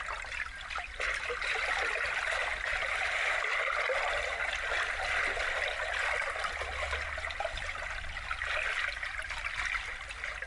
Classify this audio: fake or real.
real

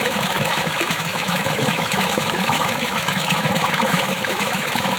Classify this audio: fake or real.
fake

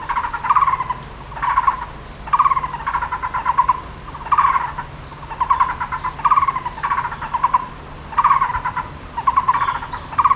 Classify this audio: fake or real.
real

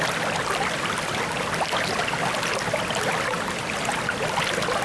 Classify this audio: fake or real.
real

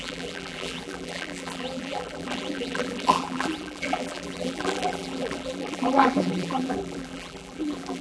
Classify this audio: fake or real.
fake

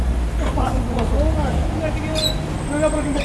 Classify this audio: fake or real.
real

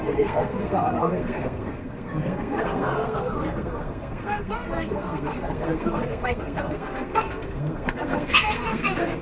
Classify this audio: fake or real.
fake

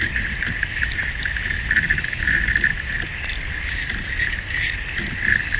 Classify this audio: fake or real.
real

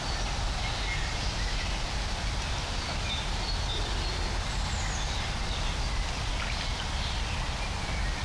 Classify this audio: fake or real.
real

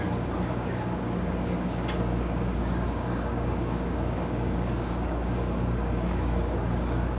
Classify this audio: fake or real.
fake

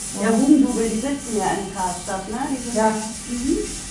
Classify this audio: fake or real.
real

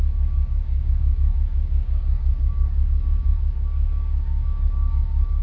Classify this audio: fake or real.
fake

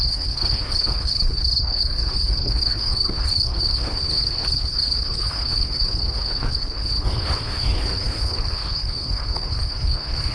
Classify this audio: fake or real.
fake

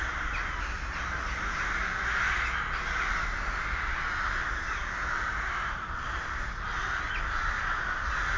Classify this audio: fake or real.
real